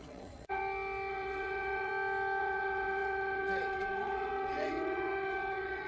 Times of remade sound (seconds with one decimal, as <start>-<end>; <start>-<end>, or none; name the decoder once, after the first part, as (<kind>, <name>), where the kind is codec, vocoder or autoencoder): 0.0-0.6 (vocoder, WaveNeXt); 1.1-1.9; 2.4-5.9